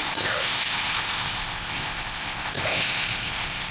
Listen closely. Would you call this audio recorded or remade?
remade